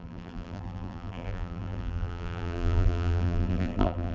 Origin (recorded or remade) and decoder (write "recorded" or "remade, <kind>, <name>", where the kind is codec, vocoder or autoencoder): remade, vocoder, BigVGAN v2